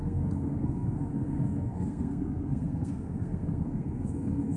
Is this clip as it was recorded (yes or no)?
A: no